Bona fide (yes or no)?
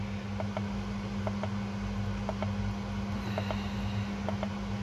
yes